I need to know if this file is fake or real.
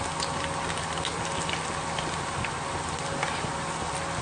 real